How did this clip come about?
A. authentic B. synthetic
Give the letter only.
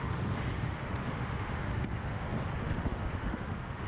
B